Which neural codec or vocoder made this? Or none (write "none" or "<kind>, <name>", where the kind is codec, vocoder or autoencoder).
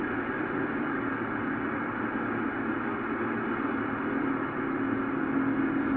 none